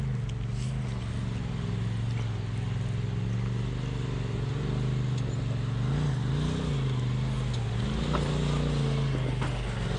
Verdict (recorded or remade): recorded